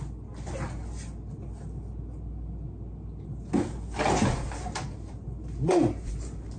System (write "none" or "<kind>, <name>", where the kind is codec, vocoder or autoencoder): none